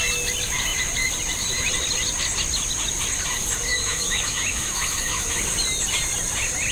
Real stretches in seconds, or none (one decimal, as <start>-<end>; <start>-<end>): 0.0-3.7; 5.4-6.7